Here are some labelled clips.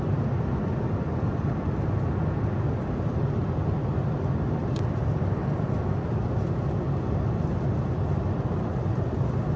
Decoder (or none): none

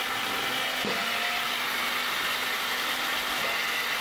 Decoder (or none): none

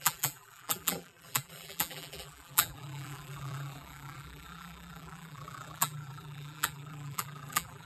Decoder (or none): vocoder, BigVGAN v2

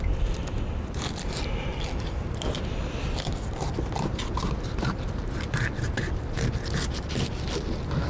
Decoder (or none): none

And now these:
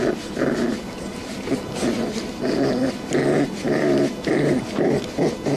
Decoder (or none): none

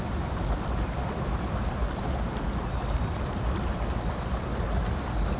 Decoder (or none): none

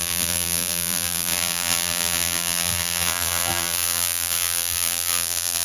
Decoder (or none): vocoder, BigVGAN v2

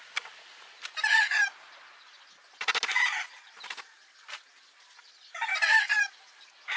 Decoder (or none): none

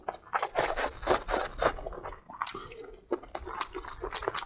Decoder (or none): none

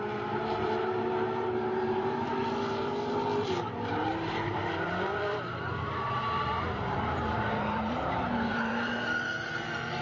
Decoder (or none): vocoder, BigVGAN v2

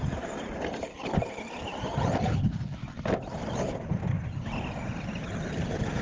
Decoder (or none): none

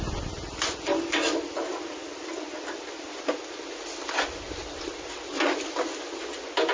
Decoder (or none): none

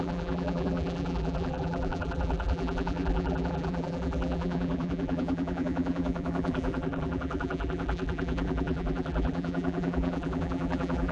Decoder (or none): vocoder, BigVGAN v2